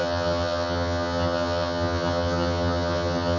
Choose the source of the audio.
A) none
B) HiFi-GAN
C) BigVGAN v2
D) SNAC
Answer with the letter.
B